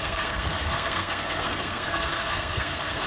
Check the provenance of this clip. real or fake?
fake